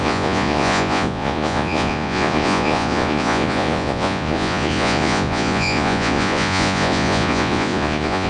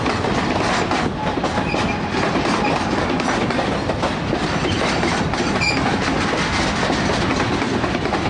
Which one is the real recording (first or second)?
second